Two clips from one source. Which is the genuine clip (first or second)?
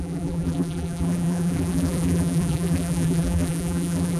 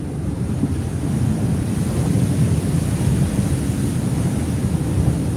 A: second